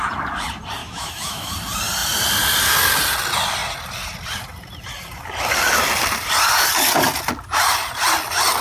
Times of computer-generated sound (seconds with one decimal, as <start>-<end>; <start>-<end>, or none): 0.8-1.5